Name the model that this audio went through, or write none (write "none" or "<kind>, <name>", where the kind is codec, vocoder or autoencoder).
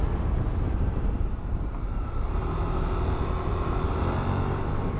none